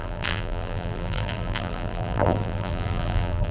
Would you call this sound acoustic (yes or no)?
no